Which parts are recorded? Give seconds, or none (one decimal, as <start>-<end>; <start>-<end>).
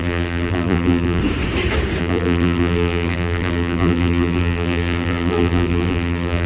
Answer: 1.2-2.0